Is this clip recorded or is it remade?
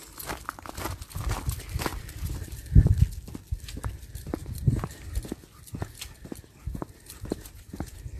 recorded